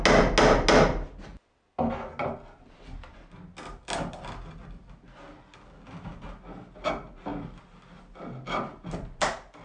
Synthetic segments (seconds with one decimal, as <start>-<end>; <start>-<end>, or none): none